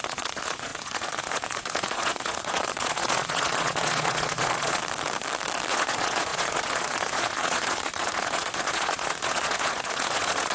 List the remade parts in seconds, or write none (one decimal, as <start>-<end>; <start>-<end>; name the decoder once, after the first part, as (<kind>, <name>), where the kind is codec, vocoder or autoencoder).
0.0-4.8 (vocoder, Vocos); 5.7-10.5